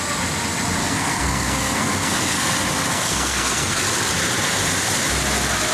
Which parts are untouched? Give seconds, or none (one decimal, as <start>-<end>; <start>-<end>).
0.0-0.8; 2.5-2.9; 3.8-5.7